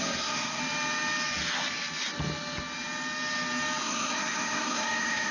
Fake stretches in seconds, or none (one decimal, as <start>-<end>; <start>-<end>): 0.0-0.6; 3.8-5.3